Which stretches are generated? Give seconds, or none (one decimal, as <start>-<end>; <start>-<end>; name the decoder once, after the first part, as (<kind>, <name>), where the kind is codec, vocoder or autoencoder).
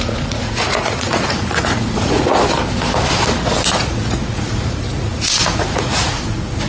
0.0-2.3 (vocoder, Vocos); 3.7-6.7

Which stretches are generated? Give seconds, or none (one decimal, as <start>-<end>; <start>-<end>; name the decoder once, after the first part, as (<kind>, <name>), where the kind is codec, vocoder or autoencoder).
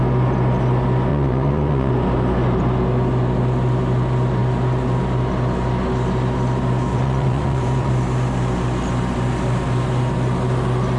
1.1-1.9 (vocoder, Vocos); 6.9-7.9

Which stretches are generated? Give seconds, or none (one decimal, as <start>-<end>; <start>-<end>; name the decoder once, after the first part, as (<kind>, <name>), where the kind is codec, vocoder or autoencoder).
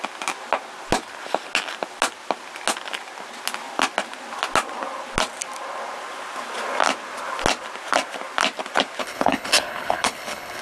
9.0-10.6 (codec, HILCodec)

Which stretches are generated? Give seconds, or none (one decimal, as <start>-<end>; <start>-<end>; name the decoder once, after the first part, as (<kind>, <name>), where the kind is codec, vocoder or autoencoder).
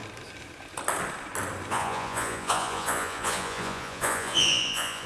1.7-5.1 (vocoder, Vocos)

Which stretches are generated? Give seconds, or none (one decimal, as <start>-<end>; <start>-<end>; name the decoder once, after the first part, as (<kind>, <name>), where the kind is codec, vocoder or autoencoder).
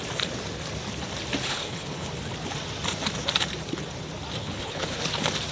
1.5-2.1 (codec, HILCodec); 4.4-5.0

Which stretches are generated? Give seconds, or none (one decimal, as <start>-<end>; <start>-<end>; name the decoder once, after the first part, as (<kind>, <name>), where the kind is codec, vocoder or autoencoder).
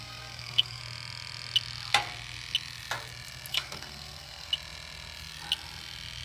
0.0-0.8 (codec, SNAC); 3.5-4.5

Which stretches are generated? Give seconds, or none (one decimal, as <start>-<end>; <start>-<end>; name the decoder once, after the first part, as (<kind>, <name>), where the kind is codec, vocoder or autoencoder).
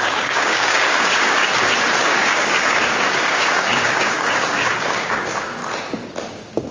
0.0-1.4 (codec, DAC); 2.0-5.6; 6.3-6.7